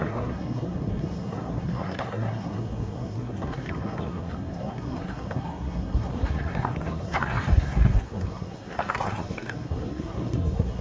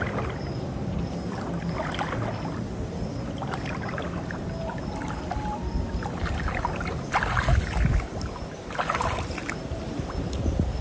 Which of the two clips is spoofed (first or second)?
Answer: first